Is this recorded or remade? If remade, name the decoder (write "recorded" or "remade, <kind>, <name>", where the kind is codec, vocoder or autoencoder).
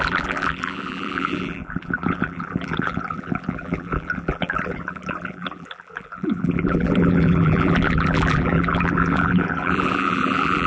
remade, vocoder, BigVGAN v2